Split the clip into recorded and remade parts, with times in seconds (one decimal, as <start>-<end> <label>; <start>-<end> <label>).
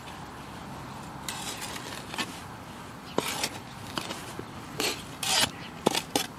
0.0-6.4 recorded